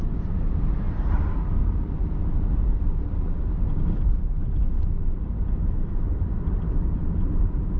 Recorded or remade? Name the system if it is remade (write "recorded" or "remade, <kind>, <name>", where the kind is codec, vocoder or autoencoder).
remade, vocoder, BigVGAN v2